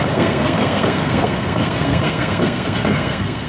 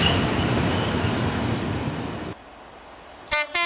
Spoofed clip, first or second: first